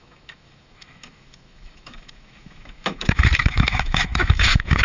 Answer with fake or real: fake